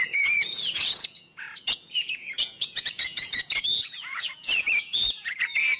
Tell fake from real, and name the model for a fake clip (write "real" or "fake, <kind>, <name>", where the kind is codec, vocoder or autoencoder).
fake, vocoder, Vocos